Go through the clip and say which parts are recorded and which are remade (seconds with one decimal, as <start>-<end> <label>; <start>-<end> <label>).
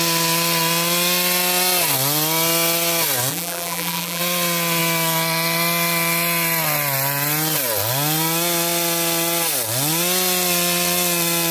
0.0-3.3 recorded; 3.3-4.2 remade; 4.2-11.5 recorded